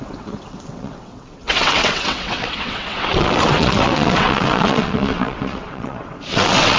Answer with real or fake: fake